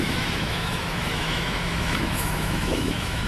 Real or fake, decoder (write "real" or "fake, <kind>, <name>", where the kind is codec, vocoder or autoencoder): fake, autoencoder, DAC-VAE